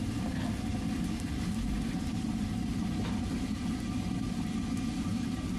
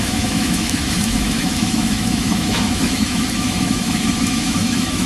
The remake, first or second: second